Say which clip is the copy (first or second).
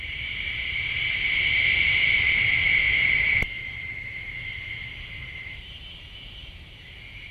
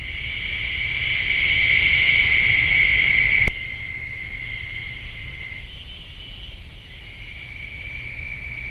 first